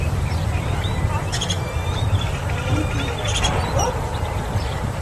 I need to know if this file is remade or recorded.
remade